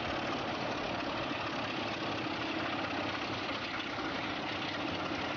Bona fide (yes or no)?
yes